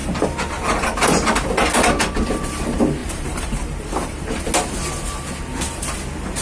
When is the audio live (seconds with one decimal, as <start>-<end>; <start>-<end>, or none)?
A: 0.0-3.0; 4.4-6.4